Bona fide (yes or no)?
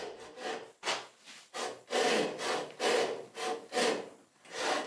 yes